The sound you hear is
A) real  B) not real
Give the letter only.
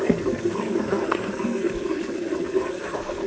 B